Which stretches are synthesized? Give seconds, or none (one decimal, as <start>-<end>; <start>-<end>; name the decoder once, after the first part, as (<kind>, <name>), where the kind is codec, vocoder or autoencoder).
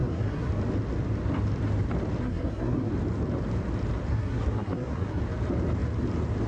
0.0-0.5 (codec, SNAC); 2.2-2.9; 4.1-5.2